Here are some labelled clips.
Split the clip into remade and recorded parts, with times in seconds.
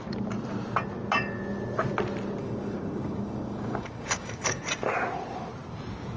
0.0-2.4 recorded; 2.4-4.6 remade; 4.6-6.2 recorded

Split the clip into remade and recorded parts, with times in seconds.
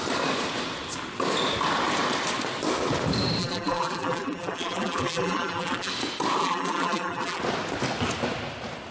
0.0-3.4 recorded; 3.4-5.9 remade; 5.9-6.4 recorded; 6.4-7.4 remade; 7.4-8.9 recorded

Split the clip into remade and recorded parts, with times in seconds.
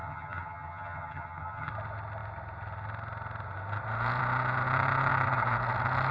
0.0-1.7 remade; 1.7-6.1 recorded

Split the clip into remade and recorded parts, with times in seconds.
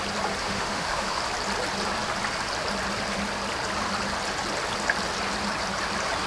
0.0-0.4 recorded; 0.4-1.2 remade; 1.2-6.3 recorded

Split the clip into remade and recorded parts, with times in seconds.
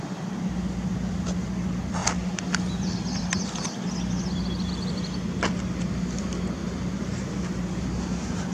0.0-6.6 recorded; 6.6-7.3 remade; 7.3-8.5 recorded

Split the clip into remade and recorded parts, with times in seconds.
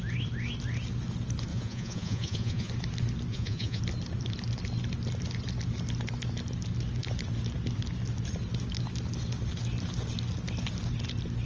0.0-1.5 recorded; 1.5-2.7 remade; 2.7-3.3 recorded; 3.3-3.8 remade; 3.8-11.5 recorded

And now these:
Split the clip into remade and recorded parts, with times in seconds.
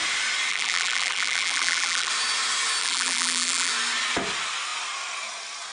0.0-0.5 recorded; 0.5-2.1 remade; 2.1-2.8 recorded; 2.8-3.7 remade; 3.7-5.7 recorded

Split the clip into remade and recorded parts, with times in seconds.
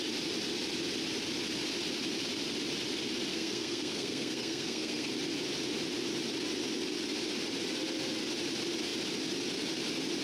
0.0-3.3 recorded; 3.3-5.1 remade; 5.1-10.2 recorded